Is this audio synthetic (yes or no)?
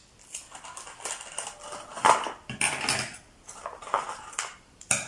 no